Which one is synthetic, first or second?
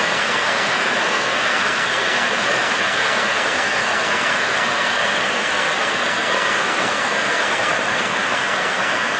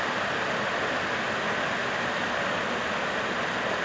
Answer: first